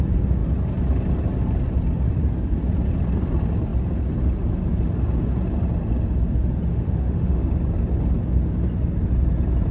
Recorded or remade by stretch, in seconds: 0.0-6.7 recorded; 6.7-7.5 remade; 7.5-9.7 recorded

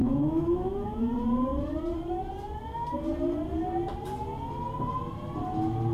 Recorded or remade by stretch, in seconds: 0.0-1.1 remade; 1.1-5.9 recorded

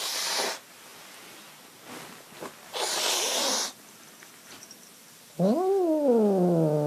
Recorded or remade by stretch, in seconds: 0.0-6.9 recorded

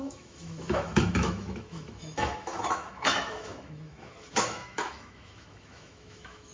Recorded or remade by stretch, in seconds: 0.0-6.5 remade

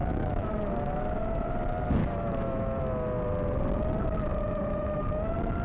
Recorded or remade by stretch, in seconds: 0.0-1.4 remade; 1.4-2.0 recorded; 2.0-2.8 remade; 2.8-4.3 recorded; 4.3-5.0 remade; 5.0-5.6 recorded

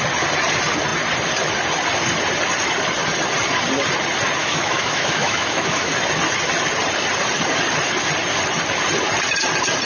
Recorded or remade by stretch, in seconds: 0.0-4.4 recorded; 4.4-5.9 remade; 5.9-9.9 recorded

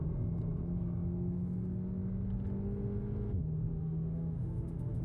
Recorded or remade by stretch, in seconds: 0.0-3.7 recorded; 3.7-5.0 remade

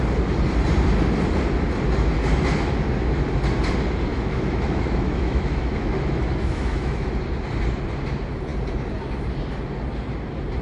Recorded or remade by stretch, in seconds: 0.0-4.1 recorded; 4.1-7.1 remade; 7.1-10.6 recorded